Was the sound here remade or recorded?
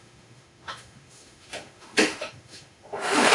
remade